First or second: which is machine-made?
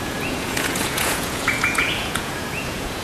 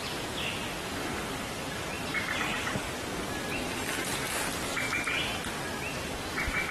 first